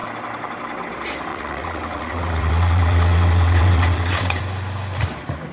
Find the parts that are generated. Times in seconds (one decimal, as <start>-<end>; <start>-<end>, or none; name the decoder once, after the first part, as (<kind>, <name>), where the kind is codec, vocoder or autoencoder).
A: 1.3-4.4 (vocoder, WaveNeXt)